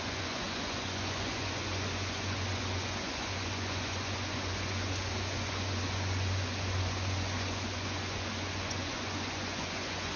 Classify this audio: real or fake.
fake